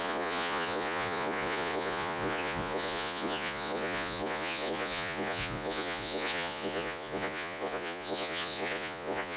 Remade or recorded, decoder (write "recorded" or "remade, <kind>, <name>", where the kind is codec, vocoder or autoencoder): remade, vocoder, Vocos